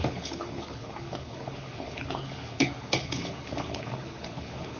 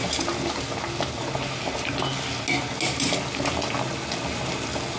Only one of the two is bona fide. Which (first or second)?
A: second